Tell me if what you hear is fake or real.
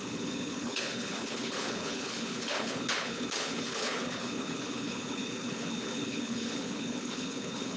fake